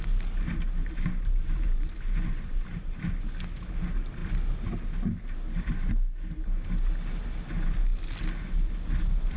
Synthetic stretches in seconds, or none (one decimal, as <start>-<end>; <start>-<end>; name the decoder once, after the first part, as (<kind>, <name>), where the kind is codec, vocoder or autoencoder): 0.8-3.1 (vocoder, BigVGAN v2)